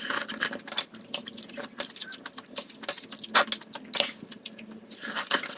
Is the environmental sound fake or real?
real